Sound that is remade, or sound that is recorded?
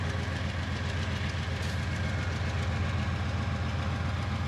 recorded